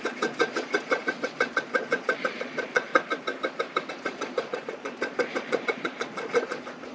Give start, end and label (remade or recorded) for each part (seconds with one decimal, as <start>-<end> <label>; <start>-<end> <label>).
0.0-2.9 remade; 2.9-3.9 recorded; 3.9-6.9 remade